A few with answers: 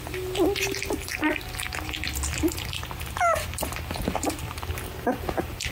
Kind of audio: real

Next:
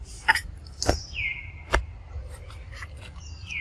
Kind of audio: real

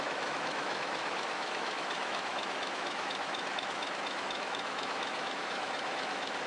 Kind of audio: fake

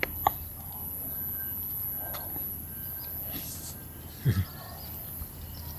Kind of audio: real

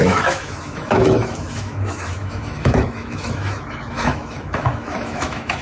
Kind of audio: fake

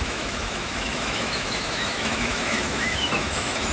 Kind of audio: fake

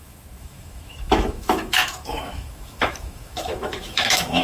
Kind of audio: fake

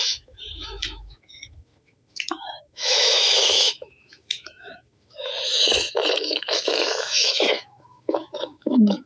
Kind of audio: fake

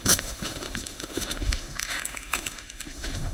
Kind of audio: fake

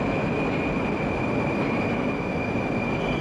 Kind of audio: real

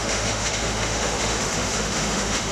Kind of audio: fake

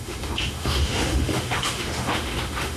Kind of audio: fake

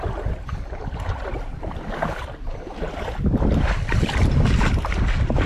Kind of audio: real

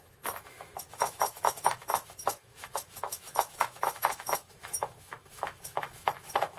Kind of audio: fake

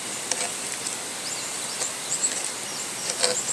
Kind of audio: real